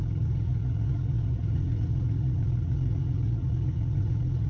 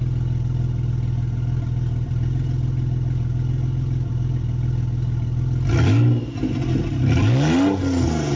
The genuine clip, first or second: second